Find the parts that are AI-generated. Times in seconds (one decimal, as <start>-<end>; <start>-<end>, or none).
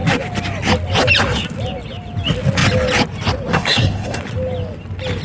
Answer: 3.5-4.2